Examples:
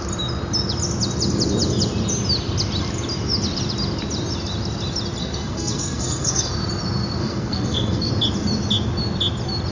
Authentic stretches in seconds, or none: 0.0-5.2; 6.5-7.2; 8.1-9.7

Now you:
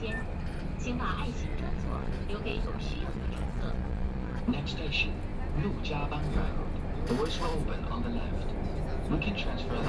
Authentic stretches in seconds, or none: 0.0-1.5; 2.1-2.5; 4.4-9.9

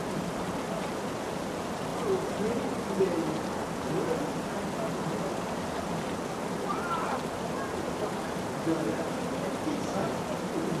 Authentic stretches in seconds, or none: 0.0-10.8

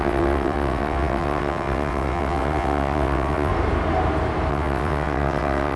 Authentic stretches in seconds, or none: 3.5-4.5

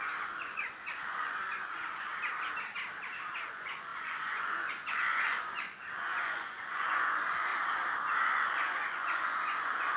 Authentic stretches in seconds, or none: 2.1-3.5; 7.5-8.2

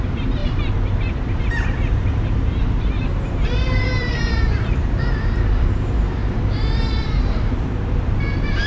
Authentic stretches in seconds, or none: 6.2-7.0

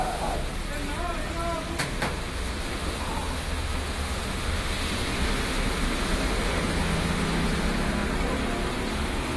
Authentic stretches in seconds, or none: 0.5-1.8; 8.1-8.9